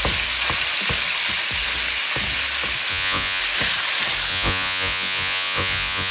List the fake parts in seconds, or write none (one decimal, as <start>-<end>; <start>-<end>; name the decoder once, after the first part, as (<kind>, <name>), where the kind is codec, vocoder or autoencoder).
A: 2.9-3.4 (vocoder, Vocos); 4.3-6.1